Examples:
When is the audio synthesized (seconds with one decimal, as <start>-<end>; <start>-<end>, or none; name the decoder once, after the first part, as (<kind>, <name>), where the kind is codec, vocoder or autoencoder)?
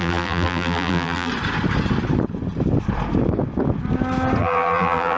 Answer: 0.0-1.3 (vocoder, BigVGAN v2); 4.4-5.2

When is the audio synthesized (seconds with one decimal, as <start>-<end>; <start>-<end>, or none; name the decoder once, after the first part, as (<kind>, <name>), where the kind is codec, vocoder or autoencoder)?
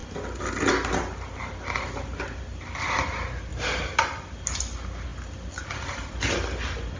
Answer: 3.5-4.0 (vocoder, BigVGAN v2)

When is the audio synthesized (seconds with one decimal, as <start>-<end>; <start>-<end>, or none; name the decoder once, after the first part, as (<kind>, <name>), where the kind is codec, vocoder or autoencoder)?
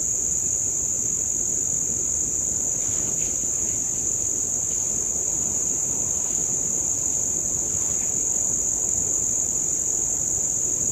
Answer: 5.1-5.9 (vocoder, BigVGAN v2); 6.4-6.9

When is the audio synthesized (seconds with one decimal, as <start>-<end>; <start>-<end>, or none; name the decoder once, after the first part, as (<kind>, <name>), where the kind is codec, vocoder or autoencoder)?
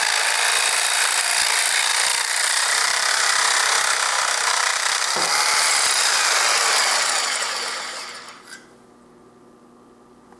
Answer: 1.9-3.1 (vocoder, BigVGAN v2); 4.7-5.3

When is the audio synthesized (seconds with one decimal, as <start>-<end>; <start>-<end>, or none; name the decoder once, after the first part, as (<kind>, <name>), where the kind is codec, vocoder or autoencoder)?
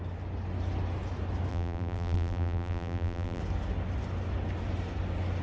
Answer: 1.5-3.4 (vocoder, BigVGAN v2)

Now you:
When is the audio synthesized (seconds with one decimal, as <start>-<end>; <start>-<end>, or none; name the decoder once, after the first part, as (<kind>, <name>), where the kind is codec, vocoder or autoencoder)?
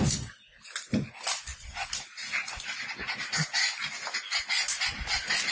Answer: none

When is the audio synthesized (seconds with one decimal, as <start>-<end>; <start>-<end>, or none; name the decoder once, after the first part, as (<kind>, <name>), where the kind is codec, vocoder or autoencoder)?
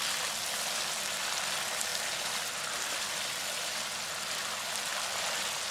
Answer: 1.9-3.9 (vocoder, BigVGAN v2); 4.9-5.7